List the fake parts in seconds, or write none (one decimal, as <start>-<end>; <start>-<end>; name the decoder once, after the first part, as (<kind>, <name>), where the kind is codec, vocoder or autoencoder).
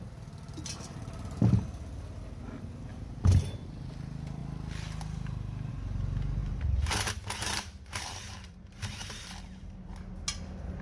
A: 2.9-3.6 (vocoder, BigVGAN v2); 6.4-9.4